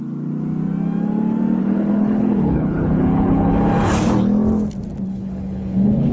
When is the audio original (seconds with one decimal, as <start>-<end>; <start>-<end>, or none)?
0.0-1.6; 3.5-5.1